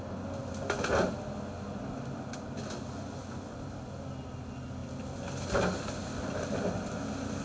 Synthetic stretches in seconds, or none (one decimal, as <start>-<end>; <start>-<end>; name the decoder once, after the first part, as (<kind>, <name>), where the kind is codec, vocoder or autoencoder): 4.8-6.7 (vocoder, BigVGAN v2)